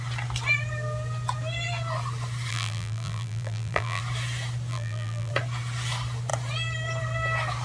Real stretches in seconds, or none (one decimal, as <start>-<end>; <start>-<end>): 0.0-2.5; 4.0-4.7; 5.3-7.6